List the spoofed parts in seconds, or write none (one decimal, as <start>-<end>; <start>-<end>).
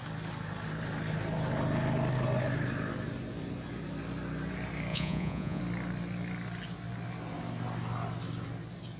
4.9-5.6